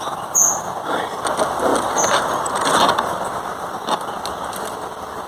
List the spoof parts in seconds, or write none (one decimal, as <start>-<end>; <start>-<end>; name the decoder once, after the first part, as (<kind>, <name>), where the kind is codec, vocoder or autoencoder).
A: none